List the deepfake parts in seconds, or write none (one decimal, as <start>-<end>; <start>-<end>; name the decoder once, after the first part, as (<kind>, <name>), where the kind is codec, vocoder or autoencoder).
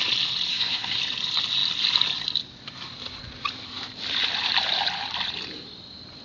0.5-1.0 (codec, SNAC)